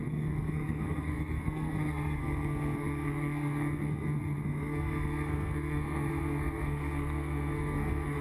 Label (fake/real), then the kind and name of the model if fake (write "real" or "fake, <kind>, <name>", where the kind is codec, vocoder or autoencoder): fake, codec, SNAC